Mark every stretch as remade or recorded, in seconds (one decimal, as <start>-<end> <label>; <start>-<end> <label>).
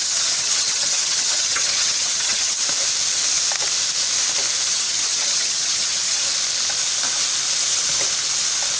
0.0-2.6 remade; 2.6-4.7 recorded; 4.7-6.2 remade; 6.2-8.8 recorded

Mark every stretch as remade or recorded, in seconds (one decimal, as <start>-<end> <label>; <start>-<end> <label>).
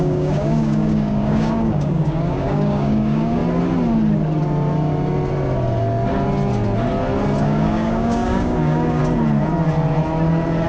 0.0-3.4 remade; 3.4-7.4 recorded; 7.4-9.0 remade; 9.0-10.7 recorded